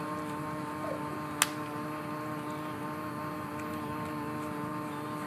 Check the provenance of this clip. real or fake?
real